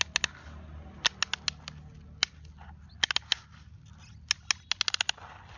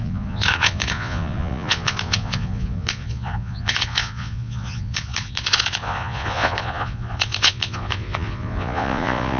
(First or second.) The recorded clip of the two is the first